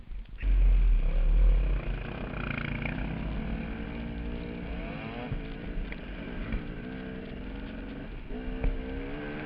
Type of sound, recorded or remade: recorded